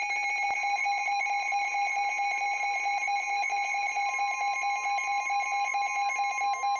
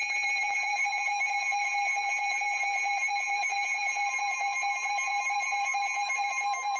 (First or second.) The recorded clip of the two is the first